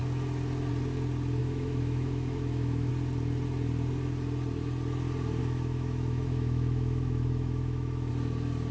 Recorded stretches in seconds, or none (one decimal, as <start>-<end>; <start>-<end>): 0.0-1.4; 2.9-5.4; 8.1-8.7